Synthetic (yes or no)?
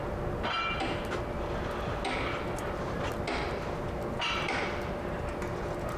no